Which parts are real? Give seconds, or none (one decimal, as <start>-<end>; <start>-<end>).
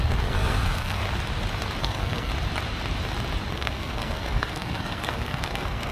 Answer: 1.0-1.8; 2.3-3.5